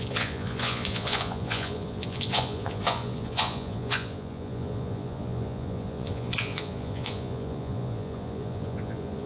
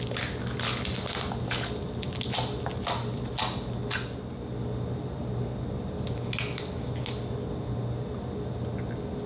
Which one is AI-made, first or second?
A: first